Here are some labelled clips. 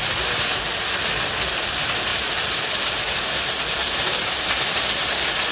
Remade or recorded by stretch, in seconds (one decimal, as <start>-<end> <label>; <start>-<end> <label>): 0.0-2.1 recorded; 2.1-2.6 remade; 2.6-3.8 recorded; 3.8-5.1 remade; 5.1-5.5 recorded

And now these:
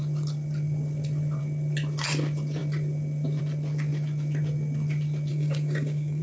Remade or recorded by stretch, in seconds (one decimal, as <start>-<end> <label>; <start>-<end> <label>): 0.0-5.3 recorded; 5.3-6.2 remade

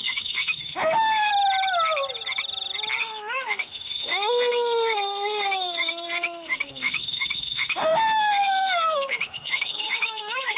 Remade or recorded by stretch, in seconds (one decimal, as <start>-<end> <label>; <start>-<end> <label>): 0.0-1.3 remade; 1.3-3.0 recorded; 3.0-10.6 remade